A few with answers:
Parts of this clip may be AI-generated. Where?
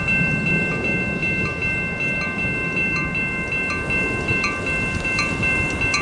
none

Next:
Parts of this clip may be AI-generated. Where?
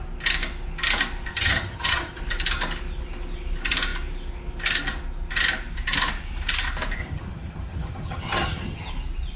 1.3-2.2; 7.0-8.9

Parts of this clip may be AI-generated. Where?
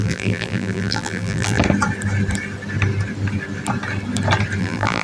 0.0-1.6; 4.6-5.0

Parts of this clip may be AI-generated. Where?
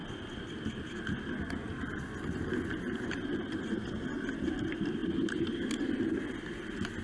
none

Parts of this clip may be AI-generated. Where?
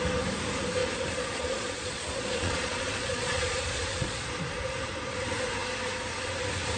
0.8-4.3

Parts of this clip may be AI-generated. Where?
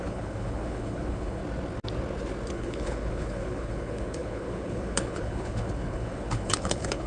0.0-1.4; 2.5-7.1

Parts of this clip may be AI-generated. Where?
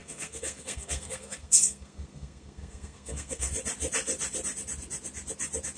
0.0-3.5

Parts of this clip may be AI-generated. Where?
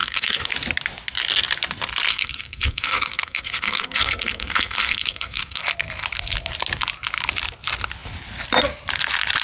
0.0-0.5; 2.1-5.6